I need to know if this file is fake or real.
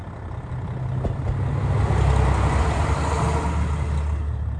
real